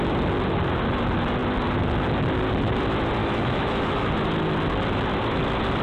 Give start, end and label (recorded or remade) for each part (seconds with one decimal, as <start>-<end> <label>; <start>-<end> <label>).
0.0-3.2 recorded; 3.2-4.1 remade; 4.1-5.8 recorded